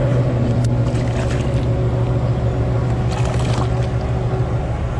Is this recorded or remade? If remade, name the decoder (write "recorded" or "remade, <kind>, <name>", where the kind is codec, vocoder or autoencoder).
recorded